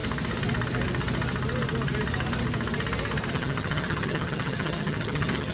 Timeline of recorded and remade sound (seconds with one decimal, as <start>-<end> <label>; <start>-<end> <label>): 0.0-3.3 recorded; 3.3-5.5 remade